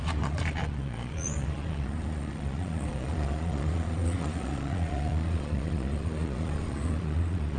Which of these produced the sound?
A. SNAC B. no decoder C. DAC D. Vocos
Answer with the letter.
D